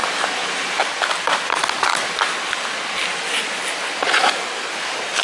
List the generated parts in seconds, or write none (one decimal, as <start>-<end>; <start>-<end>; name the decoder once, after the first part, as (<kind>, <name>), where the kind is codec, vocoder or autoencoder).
none